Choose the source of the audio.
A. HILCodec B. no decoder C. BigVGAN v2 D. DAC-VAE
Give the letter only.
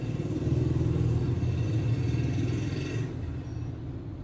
B